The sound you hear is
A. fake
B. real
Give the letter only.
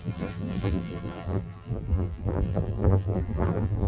A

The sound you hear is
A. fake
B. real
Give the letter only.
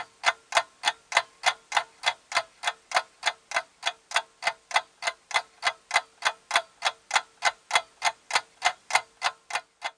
B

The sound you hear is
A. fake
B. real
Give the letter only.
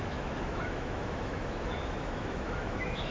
A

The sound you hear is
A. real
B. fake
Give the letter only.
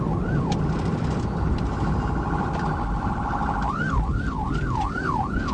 B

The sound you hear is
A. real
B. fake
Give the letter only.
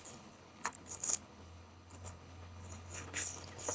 B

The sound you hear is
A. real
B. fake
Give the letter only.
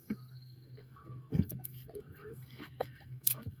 B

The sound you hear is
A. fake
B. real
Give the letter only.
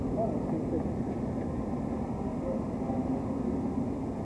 B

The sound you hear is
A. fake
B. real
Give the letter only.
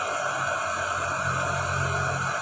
B